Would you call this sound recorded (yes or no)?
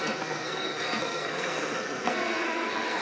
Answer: no